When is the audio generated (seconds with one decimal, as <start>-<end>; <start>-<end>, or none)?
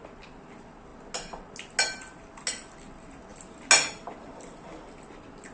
none